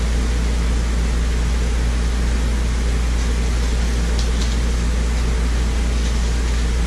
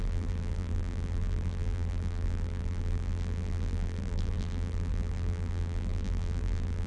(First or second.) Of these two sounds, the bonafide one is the first